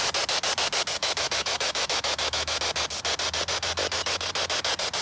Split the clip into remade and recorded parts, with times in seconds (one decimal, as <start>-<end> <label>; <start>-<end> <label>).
0.0-1.0 recorded; 1.0-2.6 remade; 2.6-5.0 recorded